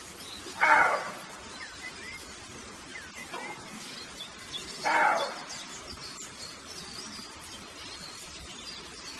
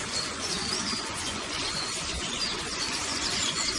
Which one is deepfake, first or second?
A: second